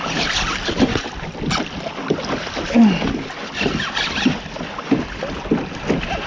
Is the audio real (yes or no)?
yes